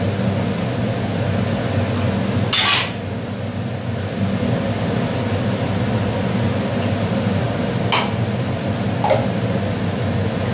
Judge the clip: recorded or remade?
recorded